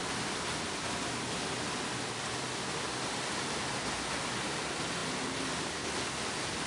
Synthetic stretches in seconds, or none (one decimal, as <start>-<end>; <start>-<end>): none